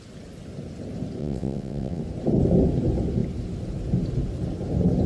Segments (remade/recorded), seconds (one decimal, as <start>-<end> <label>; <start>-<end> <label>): 0.0-1.2 recorded; 1.2-2.0 remade; 2.0-5.1 recorded